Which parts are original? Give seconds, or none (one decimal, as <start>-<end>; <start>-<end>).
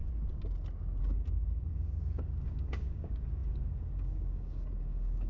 0.0-1.0